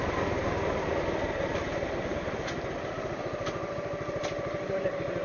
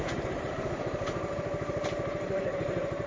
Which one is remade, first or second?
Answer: second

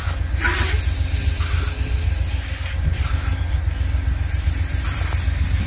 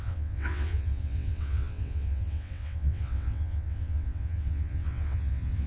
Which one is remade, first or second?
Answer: second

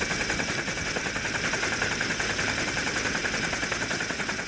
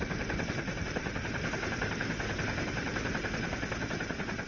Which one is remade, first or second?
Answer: second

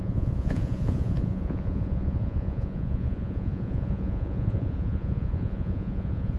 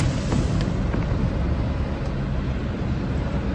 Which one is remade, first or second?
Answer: first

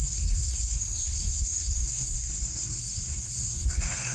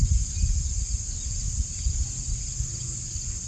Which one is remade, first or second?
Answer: first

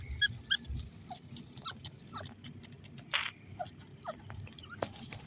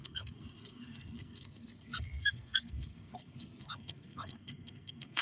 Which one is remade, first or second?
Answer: second